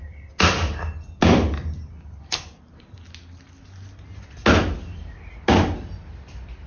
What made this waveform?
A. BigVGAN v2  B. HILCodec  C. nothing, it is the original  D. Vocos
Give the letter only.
C